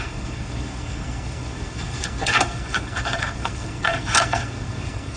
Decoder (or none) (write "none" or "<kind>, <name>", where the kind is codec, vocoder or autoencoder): codec, SNAC